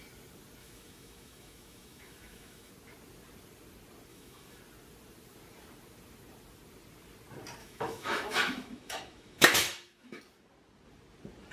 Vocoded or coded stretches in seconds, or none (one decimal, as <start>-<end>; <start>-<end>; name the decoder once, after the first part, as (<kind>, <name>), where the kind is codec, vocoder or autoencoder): 0.6-2.7 (autoencoder, DAC-VAE); 4.1-4.6; 7.6-10.2